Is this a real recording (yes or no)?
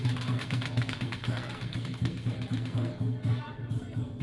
no